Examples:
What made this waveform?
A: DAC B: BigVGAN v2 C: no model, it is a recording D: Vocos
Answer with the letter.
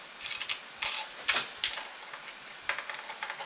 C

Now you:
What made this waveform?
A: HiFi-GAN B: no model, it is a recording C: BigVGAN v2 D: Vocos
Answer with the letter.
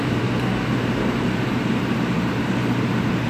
C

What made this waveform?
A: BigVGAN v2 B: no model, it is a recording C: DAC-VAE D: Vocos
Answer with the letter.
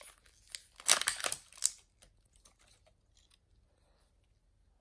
B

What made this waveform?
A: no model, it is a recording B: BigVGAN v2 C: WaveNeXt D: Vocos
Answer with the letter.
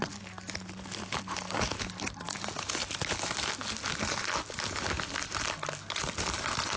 A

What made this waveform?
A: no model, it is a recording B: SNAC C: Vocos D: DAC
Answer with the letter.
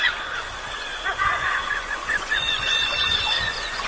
C